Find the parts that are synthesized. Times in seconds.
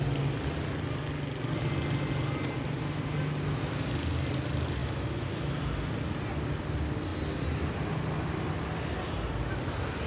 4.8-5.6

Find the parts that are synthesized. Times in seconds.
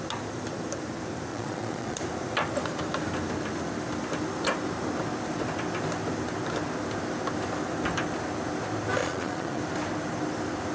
1.3-2.0; 9.0-9.6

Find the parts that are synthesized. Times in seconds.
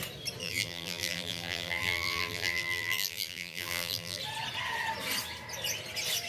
0.4-4.2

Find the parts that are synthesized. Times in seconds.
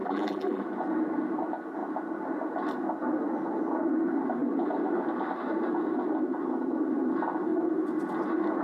0.0-0.6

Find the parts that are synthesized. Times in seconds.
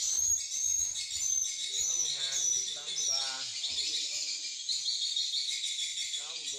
none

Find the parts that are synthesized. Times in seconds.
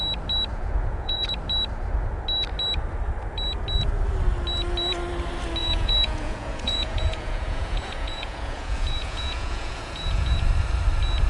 0.5-1.3; 5.6-10.3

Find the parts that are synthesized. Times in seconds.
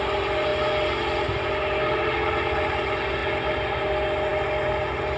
none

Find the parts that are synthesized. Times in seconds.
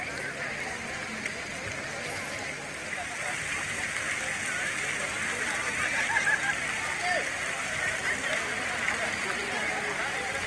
none